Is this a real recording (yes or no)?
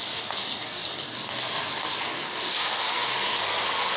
no